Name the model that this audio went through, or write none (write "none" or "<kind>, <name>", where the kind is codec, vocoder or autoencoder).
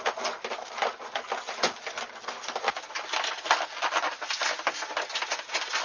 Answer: none